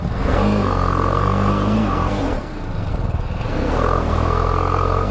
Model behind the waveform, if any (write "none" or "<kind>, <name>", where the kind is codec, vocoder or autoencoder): codec, SNAC